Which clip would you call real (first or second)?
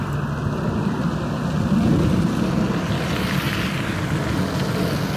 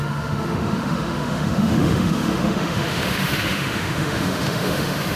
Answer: first